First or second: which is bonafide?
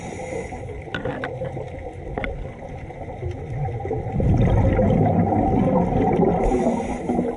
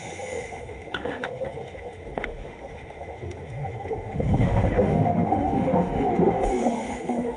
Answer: first